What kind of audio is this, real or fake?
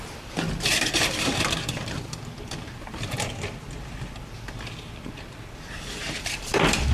fake